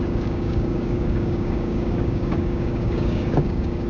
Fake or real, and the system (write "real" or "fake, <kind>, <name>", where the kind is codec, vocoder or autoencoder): fake, codec, DAC